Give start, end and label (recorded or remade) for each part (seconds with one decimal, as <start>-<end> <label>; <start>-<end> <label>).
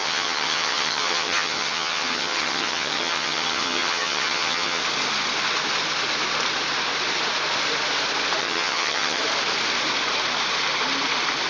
0.0-4.8 remade; 4.8-8.4 recorded; 8.4-9.2 remade; 9.2-11.5 recorded